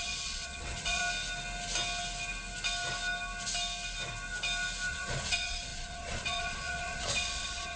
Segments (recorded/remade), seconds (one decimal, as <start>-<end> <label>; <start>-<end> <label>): 0.0-1.0 remade; 1.0-4.9 recorded; 4.9-7.8 remade